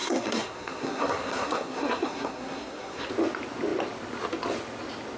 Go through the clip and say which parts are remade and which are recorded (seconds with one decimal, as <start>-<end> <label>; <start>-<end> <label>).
0.0-3.1 remade; 3.1-5.2 recorded